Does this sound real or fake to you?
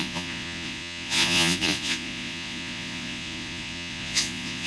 fake